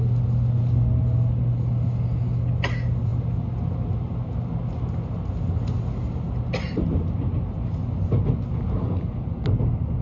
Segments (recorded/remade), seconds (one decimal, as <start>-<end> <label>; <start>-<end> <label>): 0.0-10.0 recorded

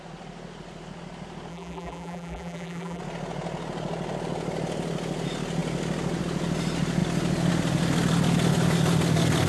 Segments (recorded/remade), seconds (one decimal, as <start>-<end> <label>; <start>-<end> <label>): 0.0-1.5 recorded; 1.5-3.0 remade; 3.0-9.5 recorded

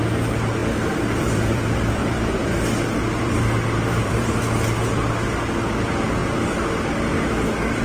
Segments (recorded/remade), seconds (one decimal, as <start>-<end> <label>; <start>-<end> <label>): 0.0-0.6 recorded; 0.6-4.4 remade; 4.4-7.8 recorded